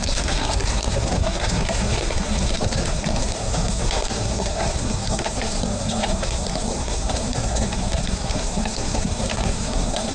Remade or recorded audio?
remade